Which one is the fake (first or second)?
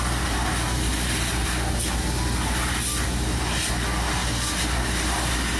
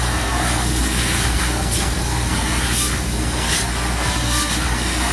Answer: second